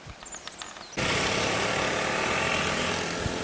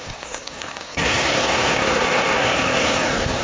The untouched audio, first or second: first